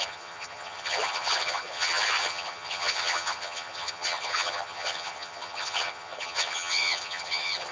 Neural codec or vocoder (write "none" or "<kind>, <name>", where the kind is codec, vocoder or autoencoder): vocoder, HiFi-GAN